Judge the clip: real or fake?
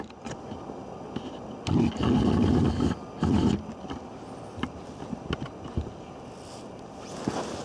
real